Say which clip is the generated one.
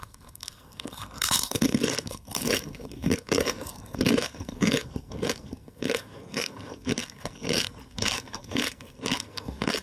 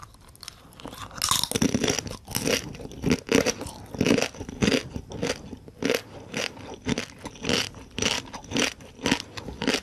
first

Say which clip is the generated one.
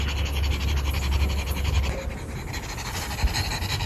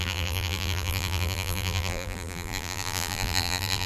second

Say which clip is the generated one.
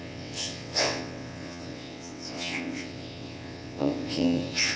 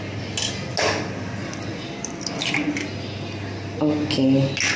first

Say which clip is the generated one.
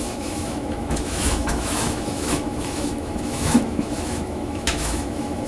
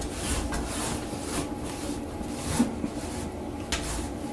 first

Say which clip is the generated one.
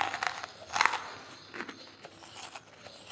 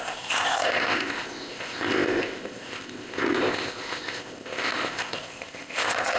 second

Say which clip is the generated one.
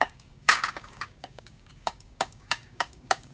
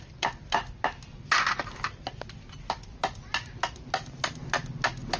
first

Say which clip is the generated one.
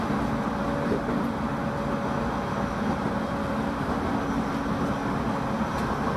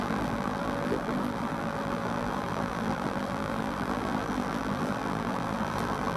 second